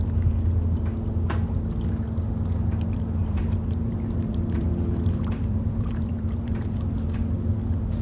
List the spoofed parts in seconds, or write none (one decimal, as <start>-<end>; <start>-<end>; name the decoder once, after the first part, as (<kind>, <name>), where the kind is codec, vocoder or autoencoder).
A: 3.2-6.8 (vocoder, BigVGAN v2)